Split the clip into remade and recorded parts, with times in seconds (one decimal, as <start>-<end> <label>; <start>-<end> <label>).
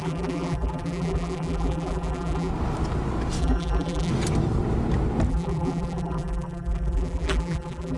0.0-2.5 remade; 2.5-3.4 recorded; 3.4-4.1 remade; 4.1-5.3 recorded; 5.3-8.0 remade